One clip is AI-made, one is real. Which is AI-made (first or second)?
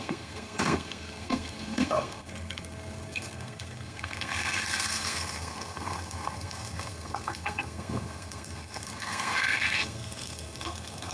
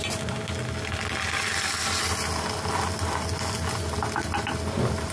first